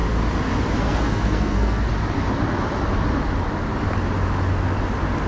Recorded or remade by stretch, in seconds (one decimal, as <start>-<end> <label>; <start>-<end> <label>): 0.0-0.8 recorded; 0.8-1.9 remade; 1.9-5.3 recorded